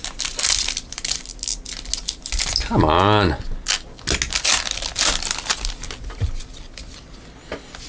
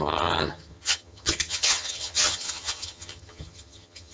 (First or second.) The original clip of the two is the first